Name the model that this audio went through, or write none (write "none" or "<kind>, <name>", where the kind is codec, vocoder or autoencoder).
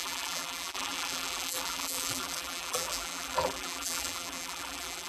vocoder, BigVGAN v2